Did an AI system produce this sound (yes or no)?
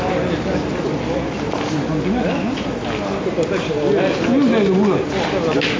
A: no